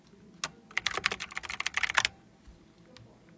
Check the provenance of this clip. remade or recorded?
recorded